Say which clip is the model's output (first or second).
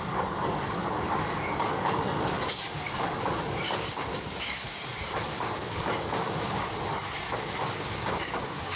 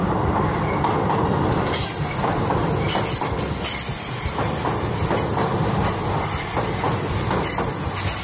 first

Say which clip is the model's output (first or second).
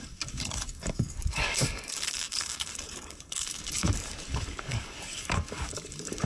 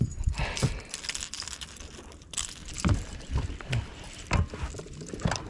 first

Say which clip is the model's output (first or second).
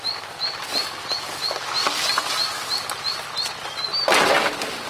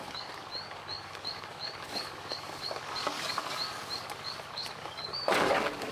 second